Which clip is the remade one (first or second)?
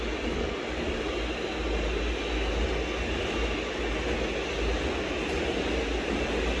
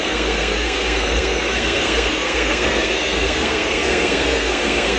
second